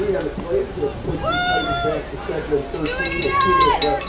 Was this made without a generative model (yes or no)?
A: yes